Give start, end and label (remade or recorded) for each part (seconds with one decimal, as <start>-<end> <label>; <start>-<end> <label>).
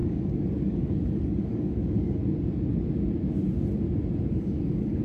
0.0-2.2 remade; 2.2-4.3 recorded; 4.3-5.0 remade